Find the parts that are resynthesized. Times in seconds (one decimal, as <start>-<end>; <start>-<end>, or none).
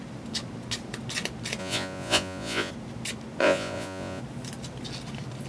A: 1.6-2.7; 3.4-4.2